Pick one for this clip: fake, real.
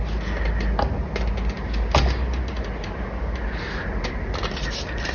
real